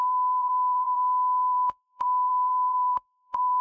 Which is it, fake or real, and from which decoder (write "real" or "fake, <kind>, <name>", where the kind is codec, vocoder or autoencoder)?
fake, vocoder, BigVGAN v2